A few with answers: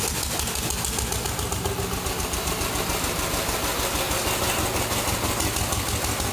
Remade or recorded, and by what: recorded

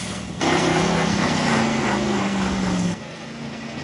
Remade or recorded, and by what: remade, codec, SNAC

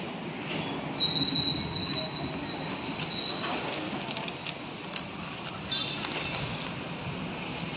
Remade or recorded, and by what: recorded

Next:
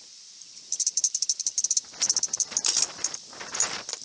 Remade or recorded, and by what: remade, vocoder, BigVGAN v2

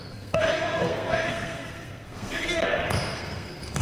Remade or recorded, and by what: remade, codec, SNAC